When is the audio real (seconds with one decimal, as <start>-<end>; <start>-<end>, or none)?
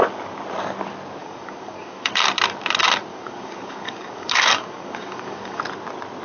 0.0-1.2; 2.1-3.1; 5.6-6.2